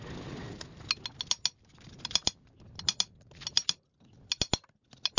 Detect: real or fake real